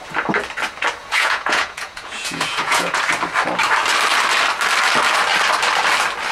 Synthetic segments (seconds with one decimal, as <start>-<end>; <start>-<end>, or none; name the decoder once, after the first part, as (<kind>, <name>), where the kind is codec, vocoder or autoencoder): 1.0-3.0 (vocoder, Vocos)